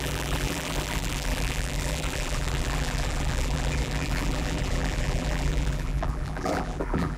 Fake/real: fake